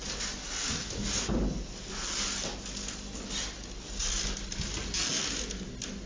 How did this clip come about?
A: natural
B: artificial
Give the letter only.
A